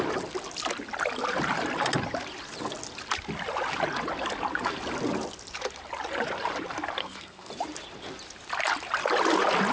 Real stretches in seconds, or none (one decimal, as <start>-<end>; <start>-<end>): 0.0-7.0; 7.5-9.7